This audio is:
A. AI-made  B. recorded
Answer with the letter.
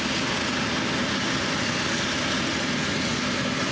B